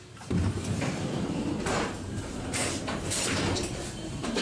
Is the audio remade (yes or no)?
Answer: yes